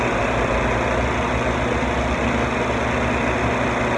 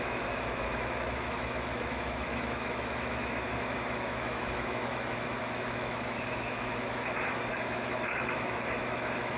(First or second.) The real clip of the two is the first